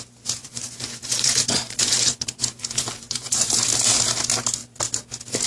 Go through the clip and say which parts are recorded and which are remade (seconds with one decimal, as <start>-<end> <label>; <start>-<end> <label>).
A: 0.0-0.4 recorded; 0.4-3.7 remade; 3.7-5.5 recorded